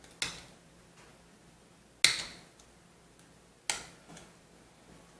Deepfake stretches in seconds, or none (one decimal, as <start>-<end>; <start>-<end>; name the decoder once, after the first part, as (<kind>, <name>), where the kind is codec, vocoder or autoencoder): none